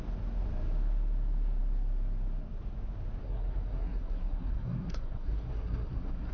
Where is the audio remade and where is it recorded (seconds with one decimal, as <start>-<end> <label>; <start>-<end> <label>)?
0.0-3.2 recorded; 3.2-6.3 remade